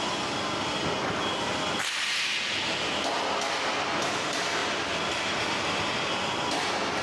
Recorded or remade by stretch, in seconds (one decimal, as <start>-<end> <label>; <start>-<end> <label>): 0.0-7.0 recorded

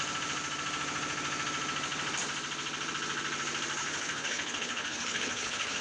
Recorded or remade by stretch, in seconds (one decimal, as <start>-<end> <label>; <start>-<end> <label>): 0.0-3.8 recorded; 3.8-5.8 remade

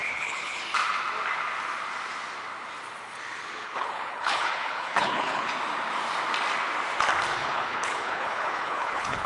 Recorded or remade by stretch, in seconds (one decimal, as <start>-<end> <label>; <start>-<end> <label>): 0.0-0.6 remade; 0.6-3.4 recorded; 3.4-5.5 remade; 5.5-7.4 recorded; 7.4-9.3 remade

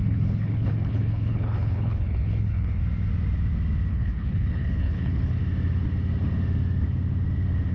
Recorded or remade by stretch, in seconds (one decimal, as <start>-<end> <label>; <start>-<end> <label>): 0.0-2.8 remade; 2.8-3.9 recorded; 3.9-5.4 remade; 5.4-7.7 recorded

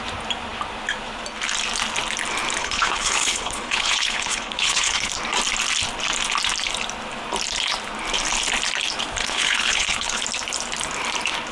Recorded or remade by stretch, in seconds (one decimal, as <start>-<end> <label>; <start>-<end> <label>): 0.0-2.6 recorded; 2.6-5.1 remade; 5.1-9.2 recorded; 9.2-10.2 remade; 10.2-11.5 recorded

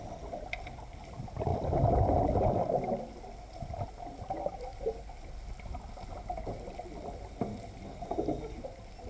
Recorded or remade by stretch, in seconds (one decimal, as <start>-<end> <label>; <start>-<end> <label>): 0.0-9.1 recorded

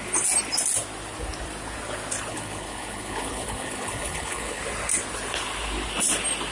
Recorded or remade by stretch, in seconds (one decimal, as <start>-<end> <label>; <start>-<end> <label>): 0.0-2.3 recorded; 2.3-4.6 remade; 4.6-6.5 recorded